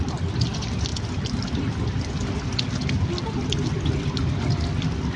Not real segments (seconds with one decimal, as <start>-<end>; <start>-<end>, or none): none